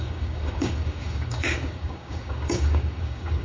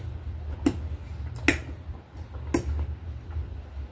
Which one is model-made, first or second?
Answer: first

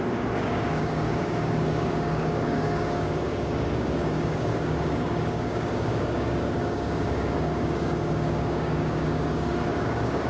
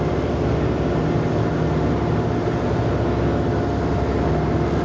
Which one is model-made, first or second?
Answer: first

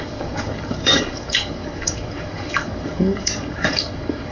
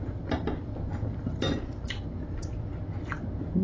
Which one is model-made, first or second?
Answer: first